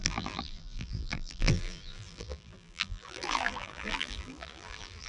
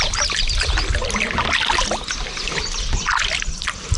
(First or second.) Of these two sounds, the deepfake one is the first